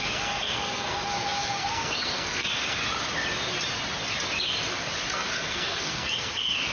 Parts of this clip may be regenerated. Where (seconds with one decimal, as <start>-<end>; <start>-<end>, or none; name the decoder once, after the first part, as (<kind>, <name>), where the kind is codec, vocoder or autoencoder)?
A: 0.0-2.8 (codec, SNAC); 5.1-6.7